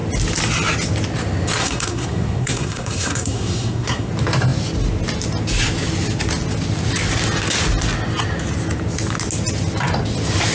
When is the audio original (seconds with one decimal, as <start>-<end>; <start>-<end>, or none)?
0.0-1.6; 4.1-10.5